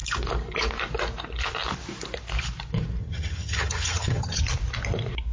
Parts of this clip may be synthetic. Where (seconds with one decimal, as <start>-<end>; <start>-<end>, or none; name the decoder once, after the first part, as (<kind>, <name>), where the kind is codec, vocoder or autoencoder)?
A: 3.0-4.4 (vocoder, HiFi-GAN)